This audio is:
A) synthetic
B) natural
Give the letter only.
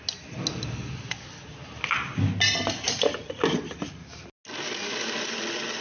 B